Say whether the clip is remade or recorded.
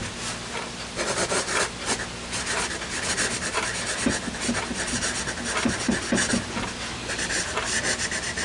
recorded